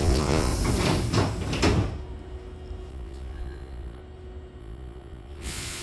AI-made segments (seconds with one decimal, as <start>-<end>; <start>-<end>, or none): 0.0-0.5; 2.9-4.0; 4.6-5.8